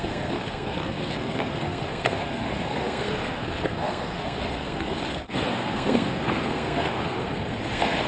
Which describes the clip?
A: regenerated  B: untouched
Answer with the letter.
A